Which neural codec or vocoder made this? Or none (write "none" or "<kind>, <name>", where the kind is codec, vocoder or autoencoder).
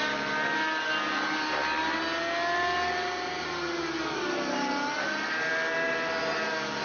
none